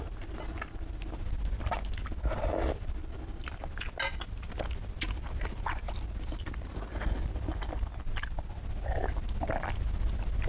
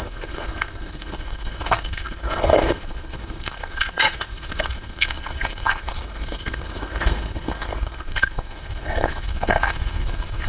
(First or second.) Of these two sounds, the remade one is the second